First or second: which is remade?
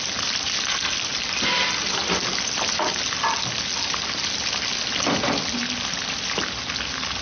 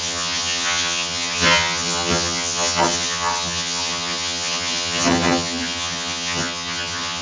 second